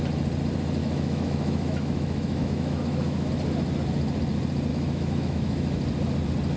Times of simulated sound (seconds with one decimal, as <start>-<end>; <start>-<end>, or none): 0.8-3.3; 4.7-5.8